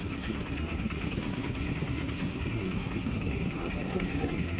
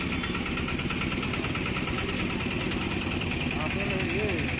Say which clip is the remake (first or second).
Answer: first